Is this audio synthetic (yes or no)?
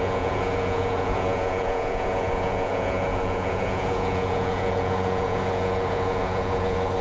yes